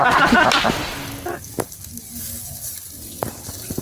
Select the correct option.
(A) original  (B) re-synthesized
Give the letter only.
A